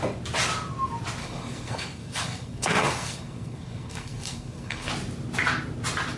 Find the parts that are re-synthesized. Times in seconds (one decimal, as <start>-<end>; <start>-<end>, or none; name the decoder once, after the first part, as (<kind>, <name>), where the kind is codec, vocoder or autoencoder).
1.2-4.9 (codec, SNAC)